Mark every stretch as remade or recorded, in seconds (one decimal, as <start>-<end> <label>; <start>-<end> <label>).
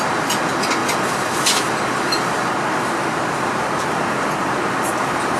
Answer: 0.0-5.4 recorded